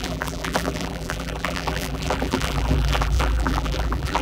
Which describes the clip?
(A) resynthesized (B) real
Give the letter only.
A